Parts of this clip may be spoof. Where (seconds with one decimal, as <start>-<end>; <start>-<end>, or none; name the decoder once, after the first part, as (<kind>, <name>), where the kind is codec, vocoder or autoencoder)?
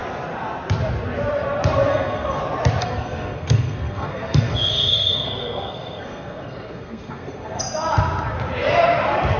1.9-2.4 (codec, SNAC); 2.8-7.6